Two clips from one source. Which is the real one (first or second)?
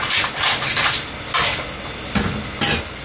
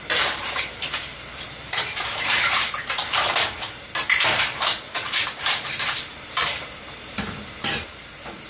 first